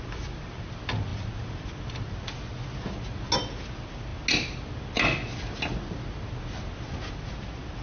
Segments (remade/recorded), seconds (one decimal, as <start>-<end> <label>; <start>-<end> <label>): 0.0-7.8 recorded